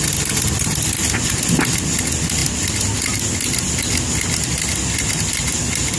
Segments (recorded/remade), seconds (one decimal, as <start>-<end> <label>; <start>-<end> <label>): 0.0-6.0 recorded